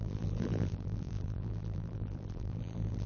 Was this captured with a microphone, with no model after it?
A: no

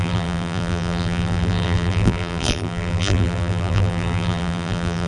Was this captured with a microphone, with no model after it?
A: no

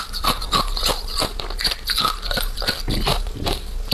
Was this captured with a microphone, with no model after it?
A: yes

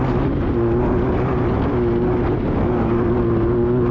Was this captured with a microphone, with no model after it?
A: yes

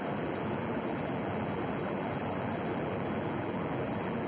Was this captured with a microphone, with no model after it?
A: no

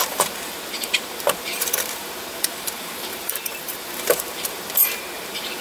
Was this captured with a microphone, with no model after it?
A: no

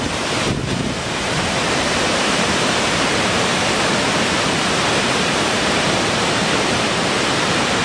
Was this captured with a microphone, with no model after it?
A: no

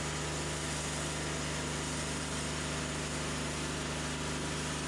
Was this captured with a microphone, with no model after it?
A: yes